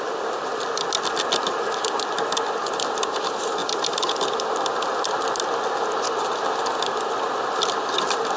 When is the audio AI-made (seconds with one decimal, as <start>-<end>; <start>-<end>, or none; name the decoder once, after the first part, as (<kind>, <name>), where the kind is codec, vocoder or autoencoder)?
none

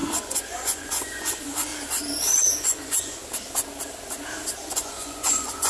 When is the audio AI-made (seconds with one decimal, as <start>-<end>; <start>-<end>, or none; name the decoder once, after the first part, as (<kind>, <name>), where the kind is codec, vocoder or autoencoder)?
0.0-1.7 (vocoder, Vocos); 2.4-3.2; 4.6-5.7

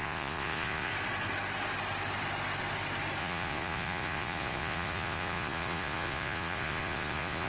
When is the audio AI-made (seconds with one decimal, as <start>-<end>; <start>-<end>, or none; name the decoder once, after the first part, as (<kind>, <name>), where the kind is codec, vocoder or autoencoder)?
0.0-0.9 (vocoder, Vocos); 3.2-7.5

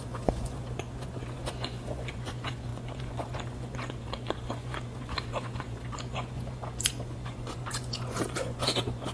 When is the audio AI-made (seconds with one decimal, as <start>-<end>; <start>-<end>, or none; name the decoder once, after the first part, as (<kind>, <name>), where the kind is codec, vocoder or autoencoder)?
0.0-9.1 (vocoder, Vocos)

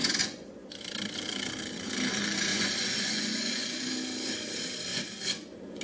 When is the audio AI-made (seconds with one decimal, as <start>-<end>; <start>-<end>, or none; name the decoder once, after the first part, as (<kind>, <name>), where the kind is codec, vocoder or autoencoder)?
0.0-0.7 (vocoder, Vocos); 2.5-3.9; 4.9-5.8

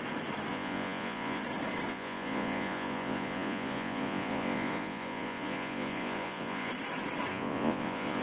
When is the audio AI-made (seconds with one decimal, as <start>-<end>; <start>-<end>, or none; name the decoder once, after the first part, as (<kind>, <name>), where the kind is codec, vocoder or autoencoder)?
0.5-1.4 (vocoder, Vocos); 1.9-6.7; 7.3-8.2

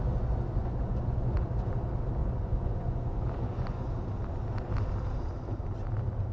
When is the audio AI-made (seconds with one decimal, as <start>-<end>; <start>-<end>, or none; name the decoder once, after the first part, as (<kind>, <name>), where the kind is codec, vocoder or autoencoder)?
0.6-1.5 (vocoder, Vocos); 2.2-3.9